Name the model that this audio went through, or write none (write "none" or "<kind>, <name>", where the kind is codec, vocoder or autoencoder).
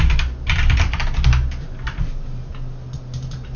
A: none